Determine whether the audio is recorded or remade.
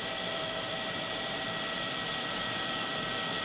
remade